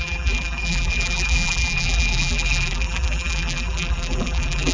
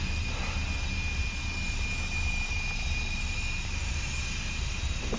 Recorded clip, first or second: second